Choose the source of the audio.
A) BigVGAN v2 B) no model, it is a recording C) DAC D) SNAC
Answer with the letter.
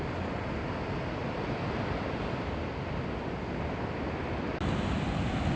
B